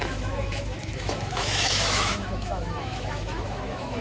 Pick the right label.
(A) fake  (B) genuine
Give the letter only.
A